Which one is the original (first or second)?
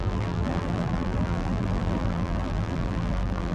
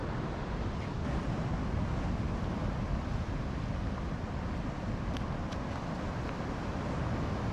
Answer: second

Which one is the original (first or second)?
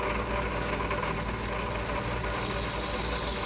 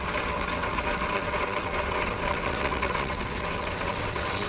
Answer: first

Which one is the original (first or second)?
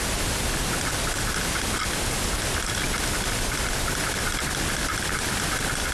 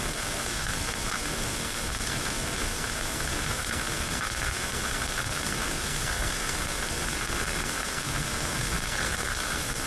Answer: first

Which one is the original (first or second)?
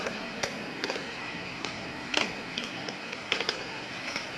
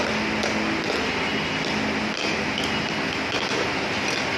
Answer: second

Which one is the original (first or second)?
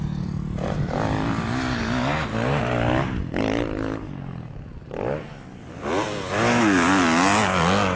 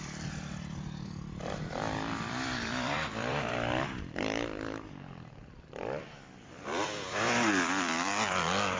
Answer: first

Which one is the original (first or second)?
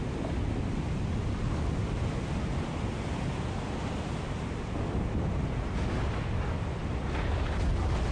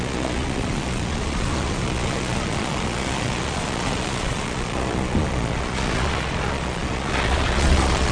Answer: first